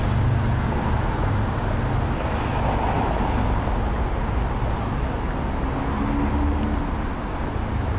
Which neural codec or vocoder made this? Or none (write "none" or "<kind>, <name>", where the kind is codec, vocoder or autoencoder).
none